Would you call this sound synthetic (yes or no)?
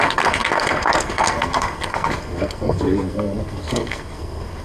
yes